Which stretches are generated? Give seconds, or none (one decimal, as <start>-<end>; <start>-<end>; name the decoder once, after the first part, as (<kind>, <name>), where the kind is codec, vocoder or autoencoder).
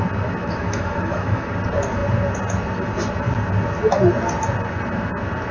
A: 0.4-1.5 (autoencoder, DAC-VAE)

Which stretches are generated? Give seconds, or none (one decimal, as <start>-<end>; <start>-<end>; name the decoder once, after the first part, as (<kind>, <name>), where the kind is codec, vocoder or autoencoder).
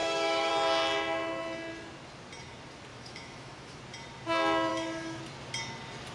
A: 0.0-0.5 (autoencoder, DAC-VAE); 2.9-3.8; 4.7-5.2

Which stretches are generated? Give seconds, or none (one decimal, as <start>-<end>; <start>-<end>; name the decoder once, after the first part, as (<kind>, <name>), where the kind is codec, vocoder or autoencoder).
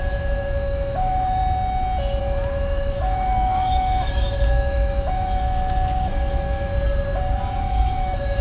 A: 0.0-1.4 (autoencoder, DAC-VAE); 2.2-6.7; 7.6-8.4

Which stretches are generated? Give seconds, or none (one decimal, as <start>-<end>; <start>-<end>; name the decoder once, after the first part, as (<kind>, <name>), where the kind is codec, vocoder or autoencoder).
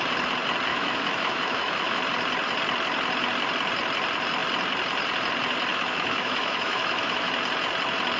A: 0.7-2.0 (autoencoder, DAC-VAE); 5.7-7.3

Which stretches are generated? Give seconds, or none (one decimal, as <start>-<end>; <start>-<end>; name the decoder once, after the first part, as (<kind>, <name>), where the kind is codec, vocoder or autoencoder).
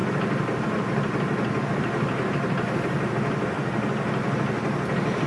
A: none